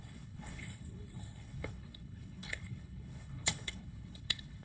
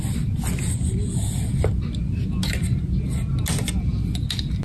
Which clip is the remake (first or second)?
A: first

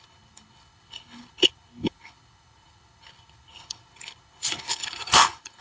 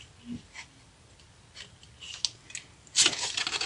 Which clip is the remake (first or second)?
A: first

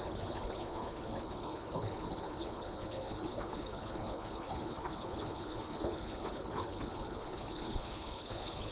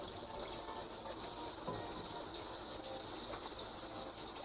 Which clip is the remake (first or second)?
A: first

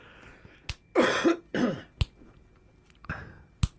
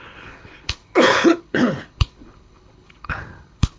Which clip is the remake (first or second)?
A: second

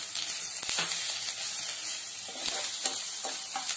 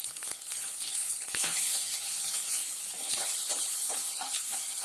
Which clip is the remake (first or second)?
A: second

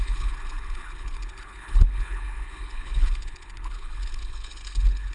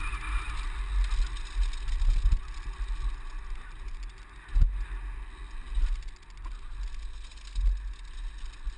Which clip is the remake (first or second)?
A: first